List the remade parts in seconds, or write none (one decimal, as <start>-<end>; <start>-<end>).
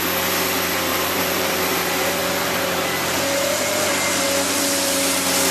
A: 0.9-1.8